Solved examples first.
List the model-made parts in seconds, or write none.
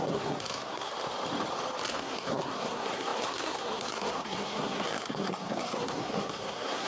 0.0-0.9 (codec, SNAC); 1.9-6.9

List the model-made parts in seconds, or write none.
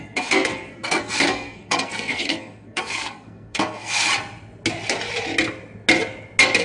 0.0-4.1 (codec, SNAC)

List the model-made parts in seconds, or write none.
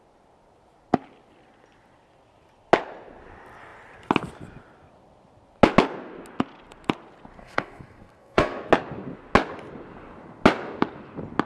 7.4-8.7 (codec, SNAC)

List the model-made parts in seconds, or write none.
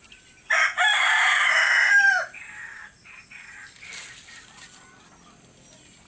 none